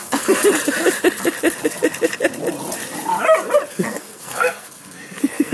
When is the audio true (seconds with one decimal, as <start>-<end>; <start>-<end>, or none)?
0.5-3.7